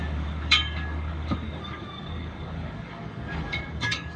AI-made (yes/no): yes